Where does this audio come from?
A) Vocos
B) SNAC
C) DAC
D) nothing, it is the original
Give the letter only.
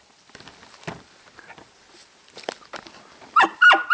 D